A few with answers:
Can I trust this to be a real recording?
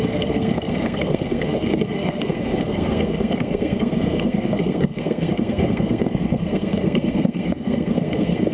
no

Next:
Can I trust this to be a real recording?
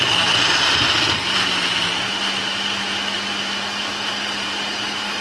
yes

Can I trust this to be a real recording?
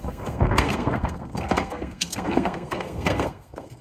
no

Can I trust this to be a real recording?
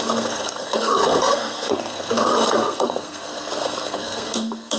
no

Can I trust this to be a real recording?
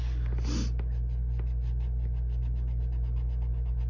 yes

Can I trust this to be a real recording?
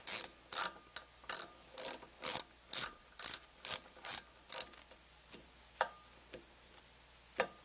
yes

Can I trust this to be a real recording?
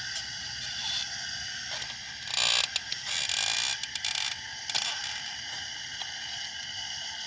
yes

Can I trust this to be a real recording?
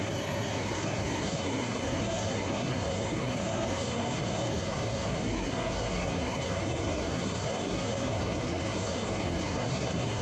no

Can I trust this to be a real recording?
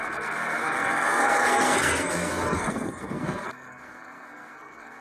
no